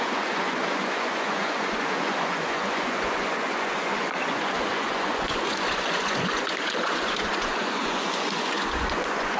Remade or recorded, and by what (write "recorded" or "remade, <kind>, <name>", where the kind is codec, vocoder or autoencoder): remade, vocoder, Vocos